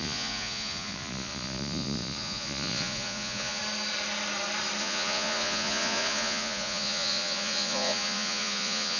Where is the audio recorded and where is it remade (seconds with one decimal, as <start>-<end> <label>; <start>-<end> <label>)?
0.0-3.6 remade; 3.6-4.8 recorded; 4.8-9.0 remade